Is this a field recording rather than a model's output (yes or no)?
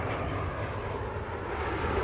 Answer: yes